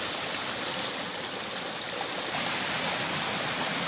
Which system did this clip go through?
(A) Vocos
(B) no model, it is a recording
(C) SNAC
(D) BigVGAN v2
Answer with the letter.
B